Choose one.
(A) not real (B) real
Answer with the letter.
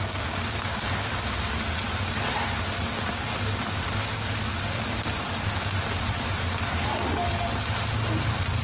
B